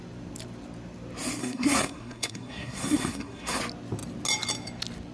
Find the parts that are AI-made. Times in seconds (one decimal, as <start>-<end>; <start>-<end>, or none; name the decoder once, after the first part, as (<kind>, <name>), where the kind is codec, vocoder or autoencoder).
1.4-3.6 (codec, SNAC)